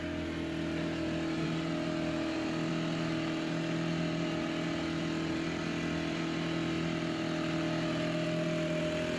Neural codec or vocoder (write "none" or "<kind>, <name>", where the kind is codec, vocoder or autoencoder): none